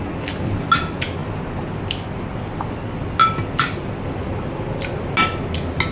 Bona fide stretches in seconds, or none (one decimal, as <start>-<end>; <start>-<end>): 0.0-1.2; 1.8-5.9